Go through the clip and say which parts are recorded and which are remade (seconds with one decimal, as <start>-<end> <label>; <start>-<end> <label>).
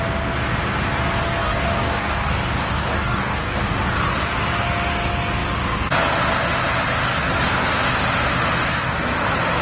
0.0-1.4 recorded; 1.4-3.8 remade; 3.8-9.6 recorded